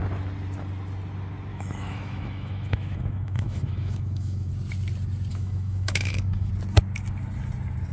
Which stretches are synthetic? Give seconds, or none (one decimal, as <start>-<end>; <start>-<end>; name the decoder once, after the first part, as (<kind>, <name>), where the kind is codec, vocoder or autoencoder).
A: 1.5-4.5 (autoencoder, DAC-VAE); 5.3-6.5